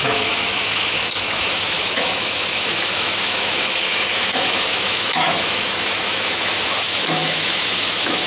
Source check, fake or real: fake